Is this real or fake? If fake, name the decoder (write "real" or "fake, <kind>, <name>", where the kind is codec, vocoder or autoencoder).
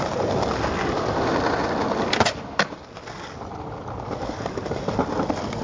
fake, vocoder, BigVGAN v2